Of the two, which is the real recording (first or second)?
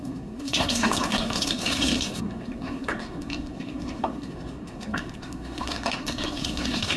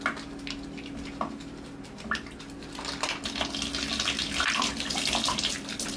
second